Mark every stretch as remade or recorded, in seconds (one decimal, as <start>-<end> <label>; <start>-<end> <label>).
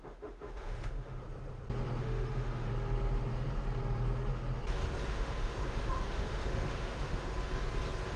0.0-1.2 remade; 1.2-2.0 recorded; 2.0-2.7 remade; 2.7-5.1 recorded; 5.1-7.3 remade; 7.3-8.2 recorded